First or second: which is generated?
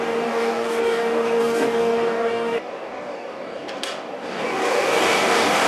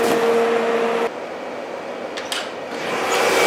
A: first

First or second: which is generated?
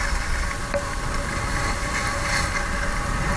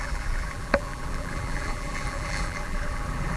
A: second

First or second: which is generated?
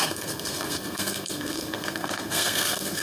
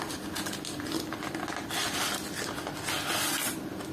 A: first